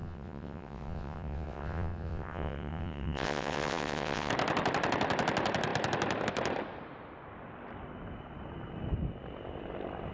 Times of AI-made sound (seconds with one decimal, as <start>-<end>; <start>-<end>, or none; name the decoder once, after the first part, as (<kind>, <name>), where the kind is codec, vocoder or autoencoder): 0.0-4.3 (vocoder, WaveNeXt)